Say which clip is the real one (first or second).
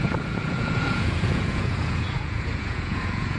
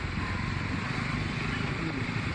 second